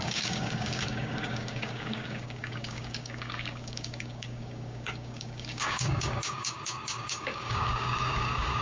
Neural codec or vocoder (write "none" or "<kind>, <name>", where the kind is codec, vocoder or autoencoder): codec, DAC